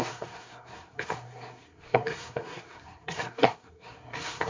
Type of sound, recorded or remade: remade